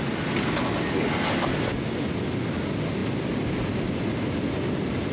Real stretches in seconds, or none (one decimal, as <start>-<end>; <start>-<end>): 0.0-5.1